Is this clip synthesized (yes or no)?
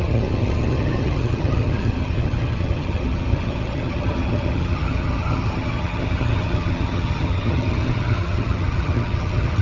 yes